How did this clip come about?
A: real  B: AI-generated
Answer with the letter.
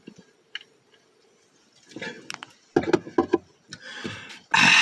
A